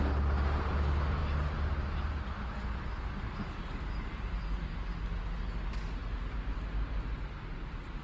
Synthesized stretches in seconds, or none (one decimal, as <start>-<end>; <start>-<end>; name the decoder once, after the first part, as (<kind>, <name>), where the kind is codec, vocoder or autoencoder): none